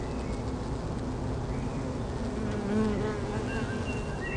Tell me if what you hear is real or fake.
real